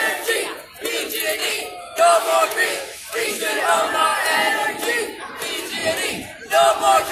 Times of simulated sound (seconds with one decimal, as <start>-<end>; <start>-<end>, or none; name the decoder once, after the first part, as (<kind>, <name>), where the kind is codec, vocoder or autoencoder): 1.4-3.6 (autoencoder, DAC-VAE)